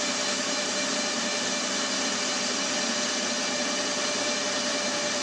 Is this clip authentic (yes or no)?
yes